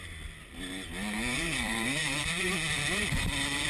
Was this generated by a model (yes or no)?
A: yes